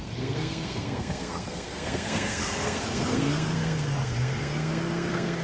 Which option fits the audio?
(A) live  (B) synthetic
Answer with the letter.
B